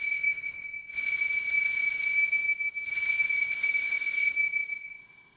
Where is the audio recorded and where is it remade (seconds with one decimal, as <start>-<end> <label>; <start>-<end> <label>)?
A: 0.0-0.9 remade; 0.9-3.6 recorded; 3.6-4.3 remade; 4.3-4.8 recorded; 4.8-5.4 remade